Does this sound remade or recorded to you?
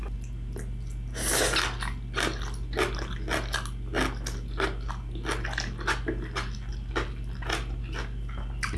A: recorded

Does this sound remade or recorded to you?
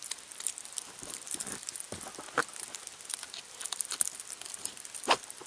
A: recorded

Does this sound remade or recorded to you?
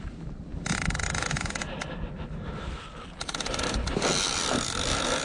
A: recorded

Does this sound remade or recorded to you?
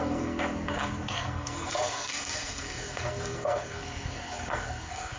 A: remade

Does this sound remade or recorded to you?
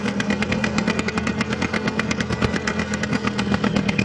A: remade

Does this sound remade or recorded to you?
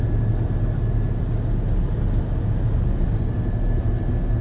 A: recorded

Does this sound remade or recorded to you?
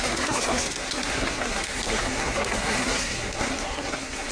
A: remade